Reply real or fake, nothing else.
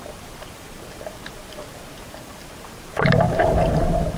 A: fake